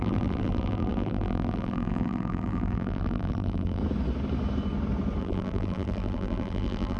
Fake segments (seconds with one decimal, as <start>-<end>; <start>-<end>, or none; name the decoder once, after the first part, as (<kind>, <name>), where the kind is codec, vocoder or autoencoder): 0.0-3.8 (vocoder, BigVGAN v2); 5.2-7.0